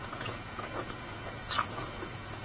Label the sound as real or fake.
fake